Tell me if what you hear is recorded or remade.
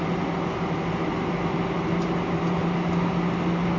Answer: recorded